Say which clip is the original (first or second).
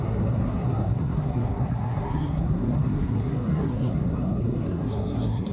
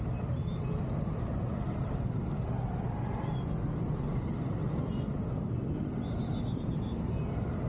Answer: second